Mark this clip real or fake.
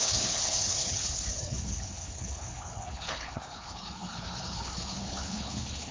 fake